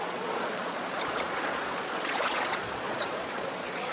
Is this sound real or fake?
fake